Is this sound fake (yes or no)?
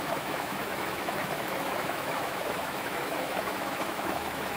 yes